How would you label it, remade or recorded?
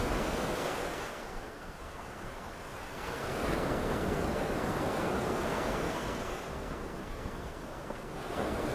remade